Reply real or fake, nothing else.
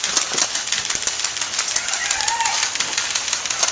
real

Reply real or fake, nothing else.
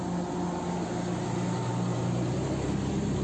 real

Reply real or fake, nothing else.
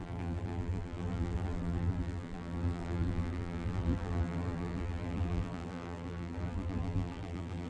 fake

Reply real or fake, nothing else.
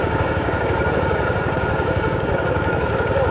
fake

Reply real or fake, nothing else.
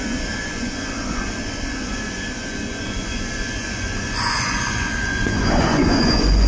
fake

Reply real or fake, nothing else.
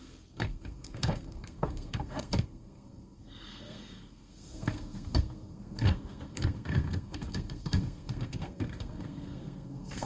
fake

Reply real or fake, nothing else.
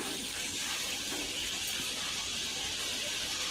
real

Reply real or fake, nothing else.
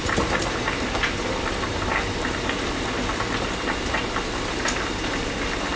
real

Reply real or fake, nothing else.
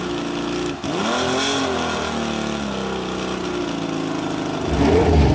real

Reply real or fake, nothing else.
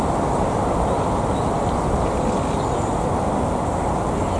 real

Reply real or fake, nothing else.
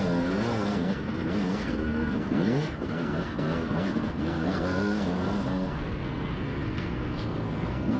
fake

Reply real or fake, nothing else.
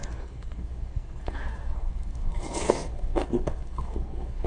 fake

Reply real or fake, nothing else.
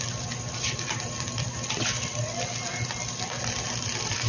real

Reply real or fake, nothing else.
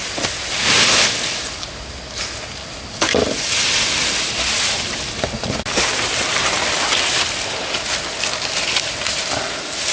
real